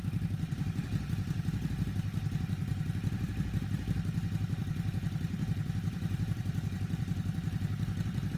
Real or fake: fake